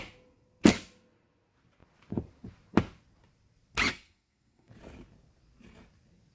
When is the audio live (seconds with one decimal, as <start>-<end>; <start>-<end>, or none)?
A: 0.0-3.9; 4.7-6.3